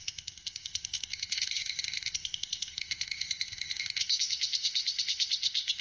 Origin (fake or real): fake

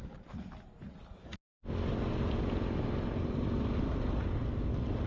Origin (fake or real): real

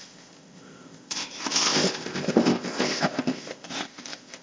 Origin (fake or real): fake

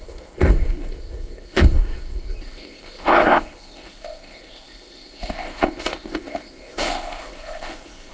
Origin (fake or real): fake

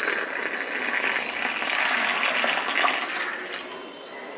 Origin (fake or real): real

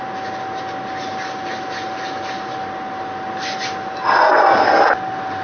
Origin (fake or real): real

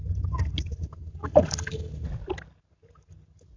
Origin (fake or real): real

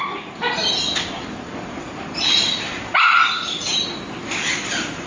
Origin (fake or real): real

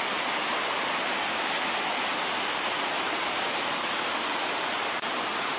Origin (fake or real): real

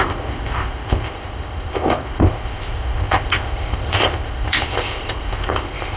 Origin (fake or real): fake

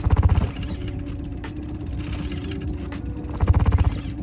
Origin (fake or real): real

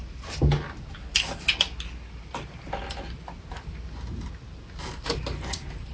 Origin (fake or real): real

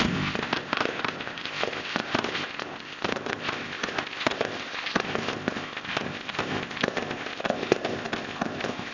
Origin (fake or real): fake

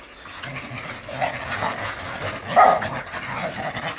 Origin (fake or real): real